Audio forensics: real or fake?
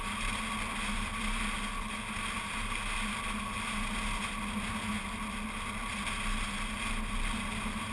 real